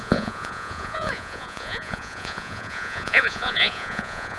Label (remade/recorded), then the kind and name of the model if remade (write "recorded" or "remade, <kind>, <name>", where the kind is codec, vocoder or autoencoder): remade, vocoder, Vocos